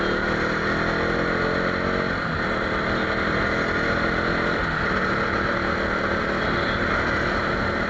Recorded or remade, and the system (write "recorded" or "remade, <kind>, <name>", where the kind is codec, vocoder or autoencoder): recorded